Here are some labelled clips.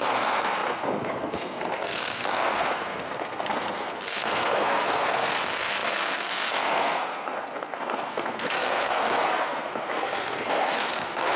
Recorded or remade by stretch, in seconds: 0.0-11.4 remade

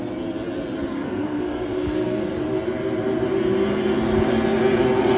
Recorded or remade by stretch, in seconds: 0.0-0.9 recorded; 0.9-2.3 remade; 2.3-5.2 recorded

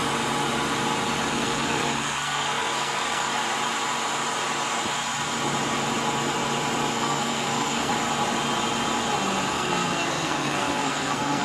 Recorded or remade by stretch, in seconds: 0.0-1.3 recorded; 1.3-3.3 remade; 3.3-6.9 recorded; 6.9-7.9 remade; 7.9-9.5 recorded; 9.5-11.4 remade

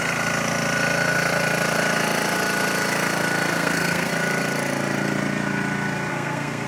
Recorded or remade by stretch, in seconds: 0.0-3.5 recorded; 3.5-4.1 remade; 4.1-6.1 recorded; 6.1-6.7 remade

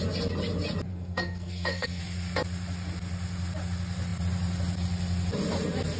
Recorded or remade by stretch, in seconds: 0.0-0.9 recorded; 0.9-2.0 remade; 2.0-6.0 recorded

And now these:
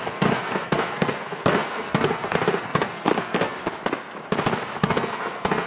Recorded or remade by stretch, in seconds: 0.0-3.6 remade; 3.6-4.8 recorded; 4.8-5.7 remade

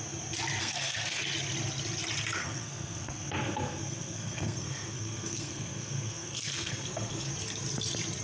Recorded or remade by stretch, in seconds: 0.0-0.6 recorded; 0.6-1.2 remade; 1.2-2.4 recorded; 2.4-7.3 remade; 7.3-8.2 recorded